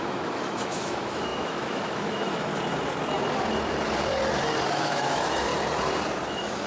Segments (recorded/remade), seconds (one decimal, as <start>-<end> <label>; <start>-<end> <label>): 0.0-2.5 remade; 2.5-4.7 recorded; 4.7-5.5 remade; 5.5-6.3 recorded; 6.3-6.7 remade